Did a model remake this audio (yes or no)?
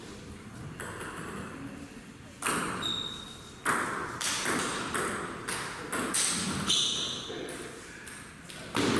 no